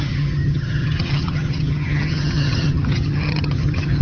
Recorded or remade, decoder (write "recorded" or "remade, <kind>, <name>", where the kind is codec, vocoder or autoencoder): remade, vocoder, HiFi-GAN